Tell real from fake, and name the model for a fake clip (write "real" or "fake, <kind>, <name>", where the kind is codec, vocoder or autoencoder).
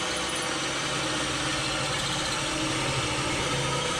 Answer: real